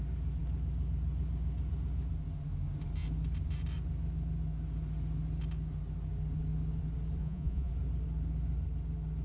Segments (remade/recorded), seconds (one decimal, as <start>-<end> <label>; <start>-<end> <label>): 0.0-7.2 recorded; 7.2-7.7 remade; 7.7-9.2 recorded